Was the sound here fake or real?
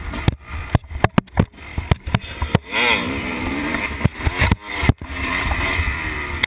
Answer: real